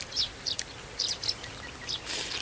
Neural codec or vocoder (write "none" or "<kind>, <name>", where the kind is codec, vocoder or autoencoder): none